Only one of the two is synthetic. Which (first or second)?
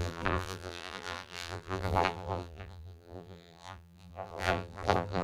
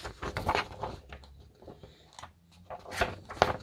first